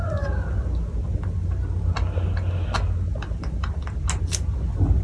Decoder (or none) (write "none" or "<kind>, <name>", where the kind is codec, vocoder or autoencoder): none